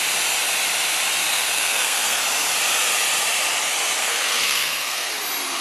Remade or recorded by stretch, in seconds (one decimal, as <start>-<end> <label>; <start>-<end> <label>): 0.0-1.3 recorded; 1.3-2.2 remade; 2.2-4.0 recorded; 4.0-5.1 remade; 5.1-5.6 recorded